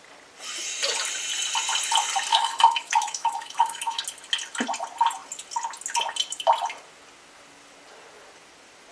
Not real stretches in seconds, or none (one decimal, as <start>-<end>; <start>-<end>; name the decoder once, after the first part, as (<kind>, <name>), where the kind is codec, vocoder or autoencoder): 2.3-4.0 (autoencoder, DAC-VAE)

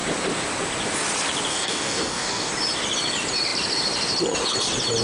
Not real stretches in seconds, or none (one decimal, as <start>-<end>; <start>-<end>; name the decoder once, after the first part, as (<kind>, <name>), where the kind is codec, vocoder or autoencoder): 1.5-2.5 (codec, DAC)

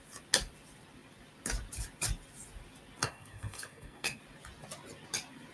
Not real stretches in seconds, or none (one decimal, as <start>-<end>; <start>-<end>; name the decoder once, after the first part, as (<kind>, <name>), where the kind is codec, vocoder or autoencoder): 3.0-4.2 (codec, SNAC)